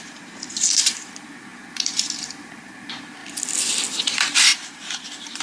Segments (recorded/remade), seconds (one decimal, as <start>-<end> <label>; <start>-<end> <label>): 0.0-3.2 remade; 3.2-3.9 recorded; 3.9-5.4 remade